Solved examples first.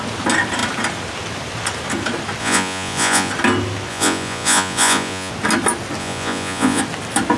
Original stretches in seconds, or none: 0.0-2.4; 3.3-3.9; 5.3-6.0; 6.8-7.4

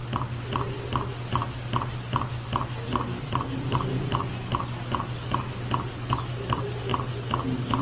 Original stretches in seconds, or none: 0.0-7.8

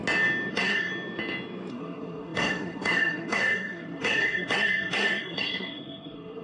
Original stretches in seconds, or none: 0.0-0.5; 0.9-1.7

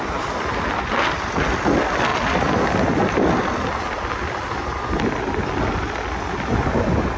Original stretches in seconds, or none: 0.0-7.2

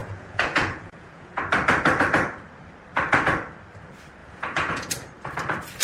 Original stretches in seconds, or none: 1.4-4.2; 4.9-5.8

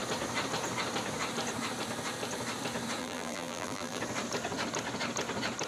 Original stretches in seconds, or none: 0.0-3.0; 4.0-5.7

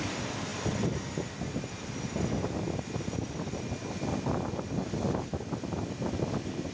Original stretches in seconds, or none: 0.0-6.7

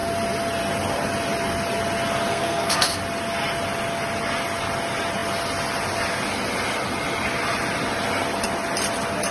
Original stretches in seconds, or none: 0.0-2.3; 3.0-9.3